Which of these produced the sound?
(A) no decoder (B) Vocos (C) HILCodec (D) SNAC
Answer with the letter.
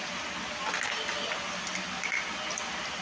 A